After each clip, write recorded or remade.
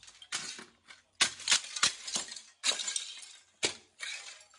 recorded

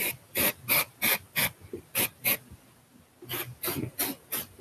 recorded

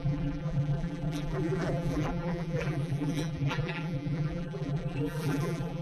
remade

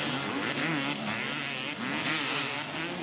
recorded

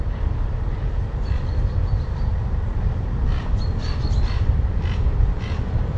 remade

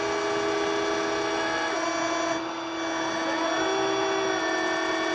recorded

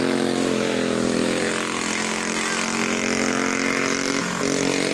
recorded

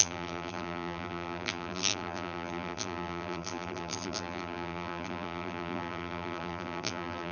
remade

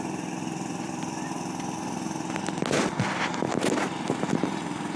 recorded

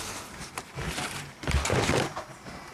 recorded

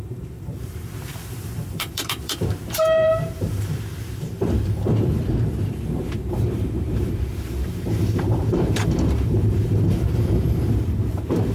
remade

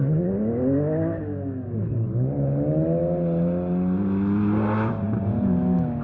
recorded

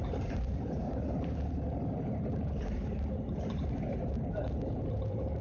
remade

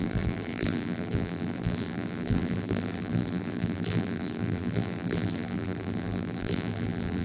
remade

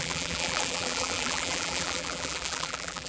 remade